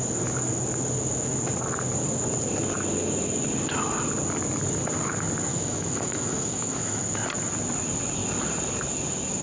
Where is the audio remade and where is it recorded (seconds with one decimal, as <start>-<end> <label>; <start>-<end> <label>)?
0.0-5.5 recorded; 5.5-7.0 remade; 7.0-9.4 recorded